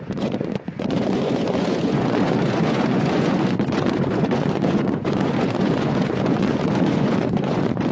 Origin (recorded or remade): remade